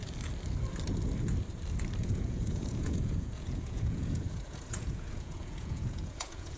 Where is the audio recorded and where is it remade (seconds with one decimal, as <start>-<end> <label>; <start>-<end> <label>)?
0.0-2.0 recorded; 2.0-6.6 remade